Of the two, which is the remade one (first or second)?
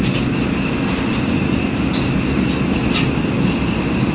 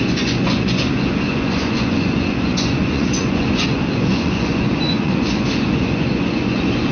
second